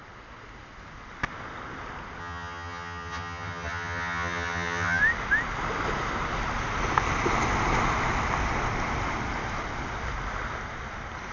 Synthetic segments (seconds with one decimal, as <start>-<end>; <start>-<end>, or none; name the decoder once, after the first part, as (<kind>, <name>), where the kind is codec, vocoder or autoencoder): 2.2-5.0 (vocoder, HiFi-GAN)